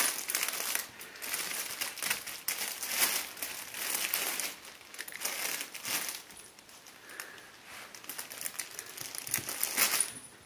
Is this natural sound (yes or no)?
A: yes